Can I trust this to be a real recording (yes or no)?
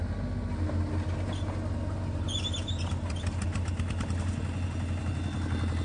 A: yes